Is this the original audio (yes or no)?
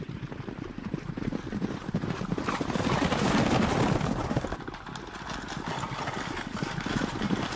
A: yes